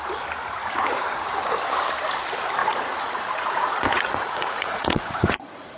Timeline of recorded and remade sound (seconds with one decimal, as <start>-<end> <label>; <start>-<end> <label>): 0.0-0.6 recorded; 0.6-1.3 remade; 1.3-2.6 recorded; 2.6-5.8 remade